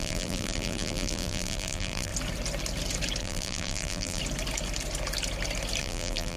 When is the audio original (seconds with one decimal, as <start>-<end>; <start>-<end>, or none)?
2.1-3.2; 4.2-5.8